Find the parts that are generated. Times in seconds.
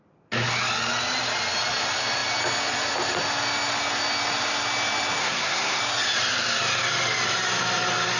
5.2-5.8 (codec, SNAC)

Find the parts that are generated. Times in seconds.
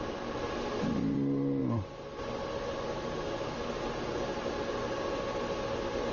none